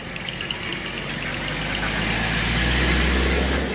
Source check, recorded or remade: recorded